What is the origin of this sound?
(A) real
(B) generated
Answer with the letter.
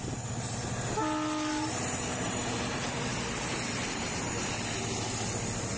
A